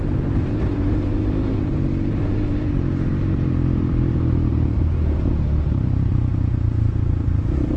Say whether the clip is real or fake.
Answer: fake